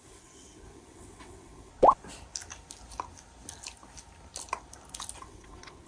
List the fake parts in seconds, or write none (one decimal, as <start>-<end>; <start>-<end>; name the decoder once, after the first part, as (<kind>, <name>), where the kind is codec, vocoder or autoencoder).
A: 0.0-1.7 (vocoder, WaveNeXt); 5.2-5.9